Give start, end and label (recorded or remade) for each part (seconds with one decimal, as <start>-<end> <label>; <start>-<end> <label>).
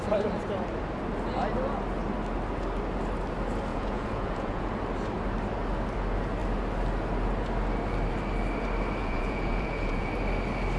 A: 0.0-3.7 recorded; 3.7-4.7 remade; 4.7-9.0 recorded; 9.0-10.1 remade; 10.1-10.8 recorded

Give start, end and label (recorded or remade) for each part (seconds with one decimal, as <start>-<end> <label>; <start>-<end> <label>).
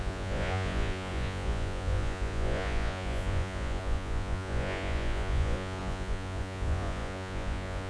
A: 0.0-7.9 remade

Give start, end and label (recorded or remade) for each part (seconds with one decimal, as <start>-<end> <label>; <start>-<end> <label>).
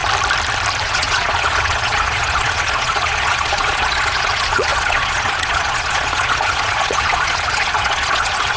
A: 0.0-0.8 recorded; 0.8-8.6 remade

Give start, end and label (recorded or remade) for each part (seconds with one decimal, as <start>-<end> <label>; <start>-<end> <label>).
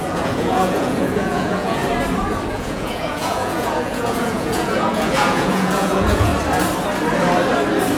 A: 0.0-1.8 remade; 1.8-2.5 recorded; 2.5-6.3 remade; 6.3-8.0 recorded